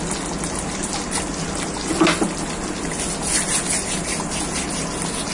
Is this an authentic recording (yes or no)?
yes